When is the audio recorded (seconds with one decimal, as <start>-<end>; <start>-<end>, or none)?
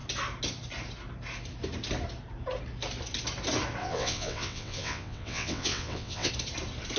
0.0-3.8; 6.3-7.0